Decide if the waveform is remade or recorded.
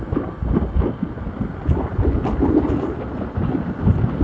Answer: recorded